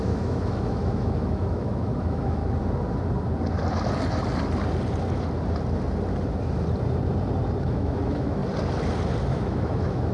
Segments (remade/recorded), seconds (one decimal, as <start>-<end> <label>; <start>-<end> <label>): 0.0-2.4 remade; 2.4-7.6 recorded; 7.6-8.4 remade; 8.4-9.2 recorded; 9.2-10.1 remade